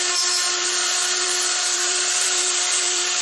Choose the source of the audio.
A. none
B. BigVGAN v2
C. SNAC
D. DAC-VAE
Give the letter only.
B